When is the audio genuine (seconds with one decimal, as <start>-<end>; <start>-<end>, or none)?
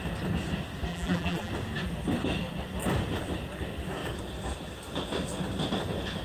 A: 0.0-0.9; 1.5-6.2